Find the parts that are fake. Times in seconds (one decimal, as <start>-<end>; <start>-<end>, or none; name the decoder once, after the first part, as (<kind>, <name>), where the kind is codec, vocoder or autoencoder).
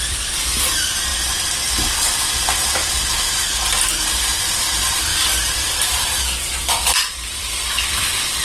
0.0-1.1 (vocoder, BigVGAN v2); 4.4-5.1; 5.7-8.4